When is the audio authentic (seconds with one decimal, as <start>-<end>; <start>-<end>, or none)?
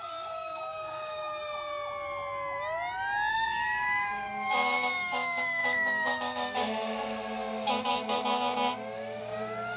1.2-3.3